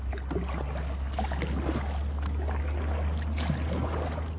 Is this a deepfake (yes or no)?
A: no